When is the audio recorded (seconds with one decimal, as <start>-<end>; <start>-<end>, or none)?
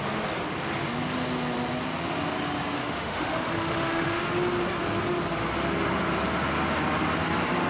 0.0-2.8; 4.3-7.7